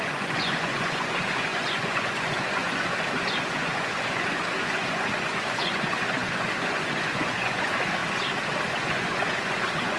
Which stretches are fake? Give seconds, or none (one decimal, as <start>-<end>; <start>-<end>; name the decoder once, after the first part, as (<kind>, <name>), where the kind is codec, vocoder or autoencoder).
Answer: 0.0-8.0 (vocoder, Vocos); 8.7-10.0